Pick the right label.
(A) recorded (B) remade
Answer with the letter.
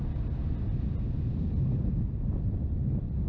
A